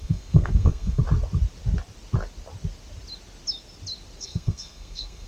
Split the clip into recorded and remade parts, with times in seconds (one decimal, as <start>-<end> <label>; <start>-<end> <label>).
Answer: 0.0-1.0 remade; 1.0-4.2 recorded; 4.2-5.3 remade